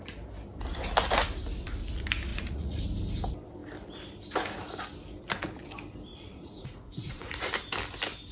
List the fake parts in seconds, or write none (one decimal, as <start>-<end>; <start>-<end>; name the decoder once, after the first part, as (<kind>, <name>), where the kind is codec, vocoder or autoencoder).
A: 2.3-2.8 (vocoder, Vocos); 6.1-7.5